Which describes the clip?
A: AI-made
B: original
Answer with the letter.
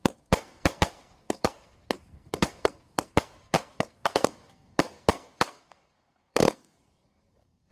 A